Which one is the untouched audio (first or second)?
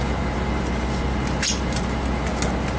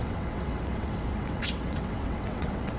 first